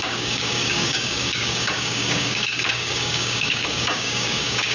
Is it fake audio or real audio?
fake